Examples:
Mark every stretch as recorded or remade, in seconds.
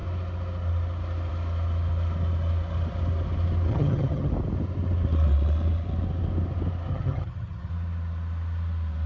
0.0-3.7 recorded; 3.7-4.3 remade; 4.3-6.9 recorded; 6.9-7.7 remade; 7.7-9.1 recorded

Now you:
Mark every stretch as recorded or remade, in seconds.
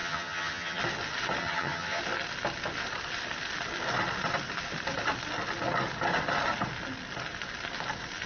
0.0-0.8 remade; 0.8-1.4 recorded; 1.4-2.0 remade; 2.0-8.3 recorded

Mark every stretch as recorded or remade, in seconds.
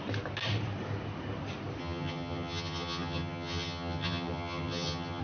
0.0-1.8 recorded; 1.8-5.2 remade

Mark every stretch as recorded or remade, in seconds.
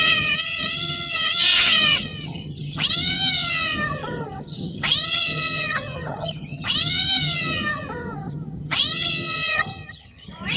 0.0-10.6 remade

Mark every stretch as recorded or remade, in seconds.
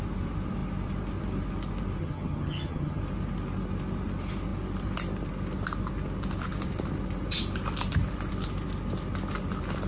0.0-2.0 recorded; 2.0-3.0 remade; 3.0-9.9 recorded